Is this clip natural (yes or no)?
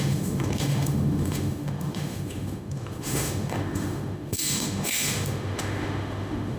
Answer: no